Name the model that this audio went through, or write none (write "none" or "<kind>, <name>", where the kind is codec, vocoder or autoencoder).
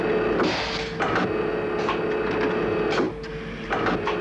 none